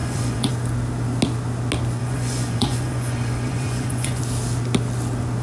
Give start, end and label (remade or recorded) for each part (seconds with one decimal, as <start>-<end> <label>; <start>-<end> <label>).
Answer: 0.0-0.5 remade; 0.5-2.0 recorded; 2.0-4.2 remade; 4.2-5.4 recorded